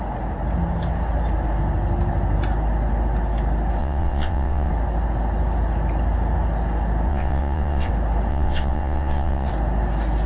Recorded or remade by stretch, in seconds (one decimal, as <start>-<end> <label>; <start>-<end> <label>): 0.0-3.8 recorded; 3.8-4.7 remade; 4.7-7.1 recorded; 7.1-7.9 remade; 7.9-8.3 recorded; 8.3-9.5 remade; 9.5-10.3 recorded